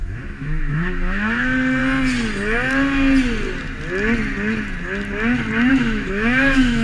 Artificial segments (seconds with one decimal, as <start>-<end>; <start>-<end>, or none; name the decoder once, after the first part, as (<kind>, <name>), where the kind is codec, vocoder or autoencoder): 0.0-1.8 (autoencoder, DAC-VAE); 5.7-6.8